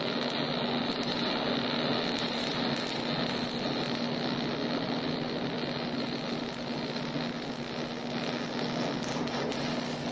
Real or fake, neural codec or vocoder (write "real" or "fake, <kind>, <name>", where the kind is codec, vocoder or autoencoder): real